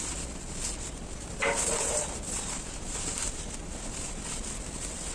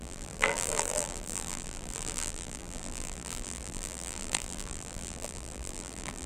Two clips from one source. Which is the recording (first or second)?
first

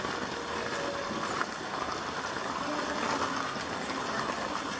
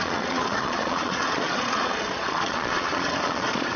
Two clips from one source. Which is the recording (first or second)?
first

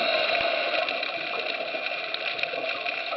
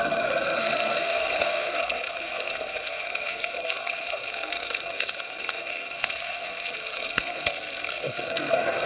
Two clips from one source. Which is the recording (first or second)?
first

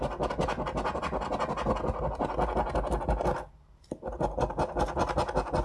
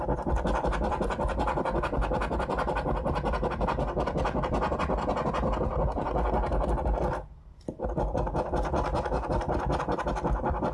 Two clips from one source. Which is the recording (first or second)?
first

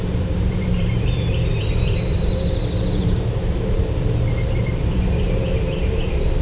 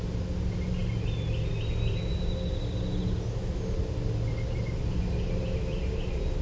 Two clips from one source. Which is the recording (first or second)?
second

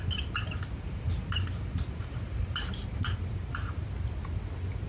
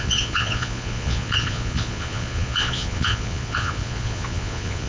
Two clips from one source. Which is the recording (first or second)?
first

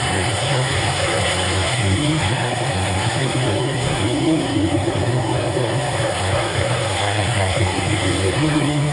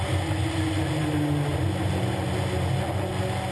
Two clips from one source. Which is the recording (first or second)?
second